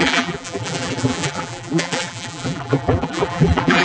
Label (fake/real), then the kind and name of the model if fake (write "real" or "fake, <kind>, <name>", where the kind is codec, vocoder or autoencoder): fake, vocoder, BigVGAN v2